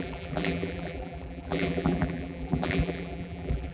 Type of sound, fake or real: fake